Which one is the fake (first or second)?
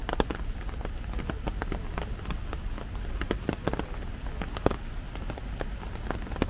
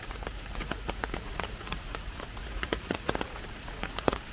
second